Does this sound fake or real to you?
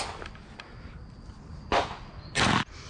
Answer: real